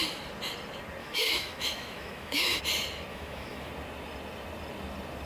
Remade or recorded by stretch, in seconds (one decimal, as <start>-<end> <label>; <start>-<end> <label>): 0.0-1.0 recorded; 1.0-2.6 remade; 2.6-3.1 recorded; 3.1-3.7 remade; 3.7-5.3 recorded